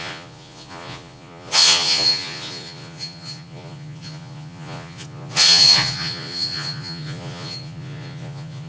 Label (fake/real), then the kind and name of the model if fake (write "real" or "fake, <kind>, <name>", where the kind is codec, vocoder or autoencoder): fake, vocoder, Vocos